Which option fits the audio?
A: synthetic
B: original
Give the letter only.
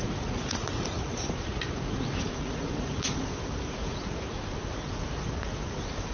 A